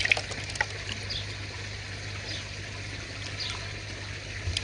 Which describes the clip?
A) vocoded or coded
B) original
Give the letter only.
B